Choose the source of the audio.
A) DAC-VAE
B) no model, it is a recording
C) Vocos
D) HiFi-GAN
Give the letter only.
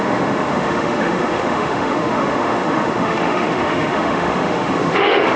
A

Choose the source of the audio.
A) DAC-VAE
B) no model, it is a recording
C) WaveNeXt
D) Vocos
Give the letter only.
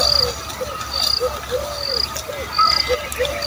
B